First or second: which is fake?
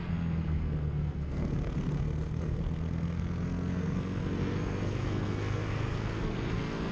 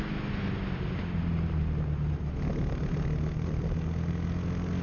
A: first